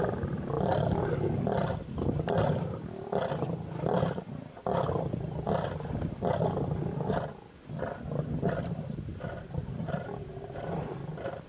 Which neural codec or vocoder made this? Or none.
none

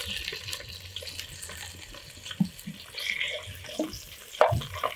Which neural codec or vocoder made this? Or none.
none